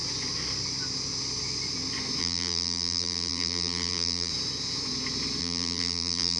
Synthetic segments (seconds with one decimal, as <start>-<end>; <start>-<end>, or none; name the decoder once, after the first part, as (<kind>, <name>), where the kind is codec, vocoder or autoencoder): 2.2-4.3 (vocoder, BigVGAN v2); 5.4-6.4